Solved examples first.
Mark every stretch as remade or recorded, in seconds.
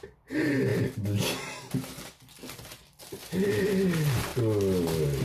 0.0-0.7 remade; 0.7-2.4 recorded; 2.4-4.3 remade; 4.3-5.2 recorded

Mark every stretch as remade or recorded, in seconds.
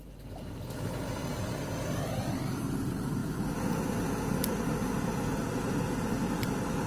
0.0-6.9 recorded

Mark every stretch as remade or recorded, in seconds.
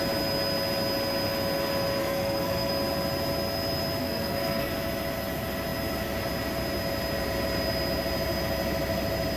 0.0-2.0 recorded; 2.0-2.7 remade; 2.7-4.0 recorded; 4.0-4.7 remade; 4.7-9.4 recorded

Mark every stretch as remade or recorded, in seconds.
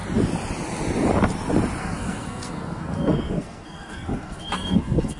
0.0-1.8 recorded; 1.8-5.2 remade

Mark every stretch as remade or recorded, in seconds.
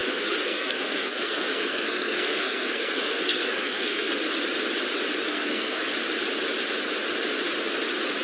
0.0-4.1 remade; 4.1-5.3 recorded; 5.3-5.9 remade; 5.9-8.2 recorded